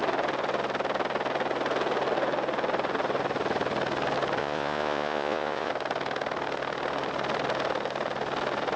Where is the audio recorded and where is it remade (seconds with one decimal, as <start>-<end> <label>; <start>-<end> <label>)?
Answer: 0.0-4.4 recorded; 4.4-5.7 remade; 5.7-8.8 recorded